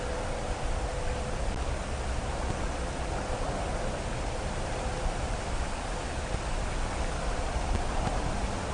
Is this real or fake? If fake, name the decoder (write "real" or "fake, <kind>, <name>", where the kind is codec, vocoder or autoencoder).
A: real